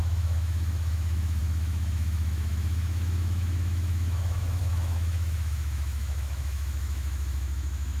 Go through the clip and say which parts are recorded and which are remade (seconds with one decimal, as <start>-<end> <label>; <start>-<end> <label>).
0.0-8.0 remade